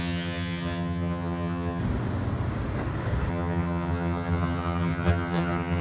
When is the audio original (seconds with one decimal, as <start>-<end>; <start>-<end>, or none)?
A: 1.8-3.3